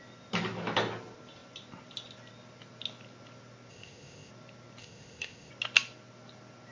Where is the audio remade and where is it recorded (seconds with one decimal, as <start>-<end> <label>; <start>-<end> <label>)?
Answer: 0.0-3.7 recorded; 3.7-4.3 remade; 4.3-4.8 recorded; 4.8-5.5 remade; 5.5-6.7 recorded